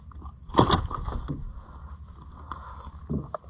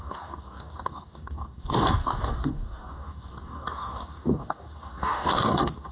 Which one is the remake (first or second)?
second